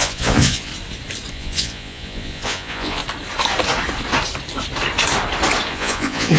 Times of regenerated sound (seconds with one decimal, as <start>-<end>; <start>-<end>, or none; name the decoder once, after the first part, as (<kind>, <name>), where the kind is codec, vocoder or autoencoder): 0.0-0.7 (vocoder, Vocos); 1.3-3.0; 5.7-6.4

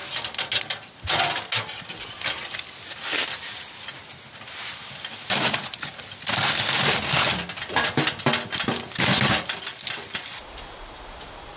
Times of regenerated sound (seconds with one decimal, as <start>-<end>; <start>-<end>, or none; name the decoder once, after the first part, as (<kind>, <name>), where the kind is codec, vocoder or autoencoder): none

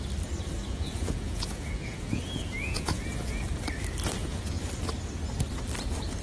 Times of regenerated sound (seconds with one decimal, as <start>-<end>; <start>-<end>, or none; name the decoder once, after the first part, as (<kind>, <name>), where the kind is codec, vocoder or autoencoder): 0.6-3.4 (vocoder, Vocos); 4.2-4.7